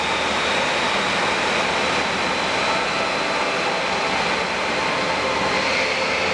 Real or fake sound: real